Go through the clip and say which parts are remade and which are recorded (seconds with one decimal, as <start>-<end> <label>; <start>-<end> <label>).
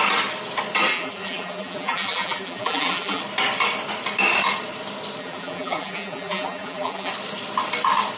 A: 0.0-0.9 recorded; 0.9-3.2 remade; 3.2-5.2 recorded; 5.2-7.1 remade; 7.1-8.2 recorded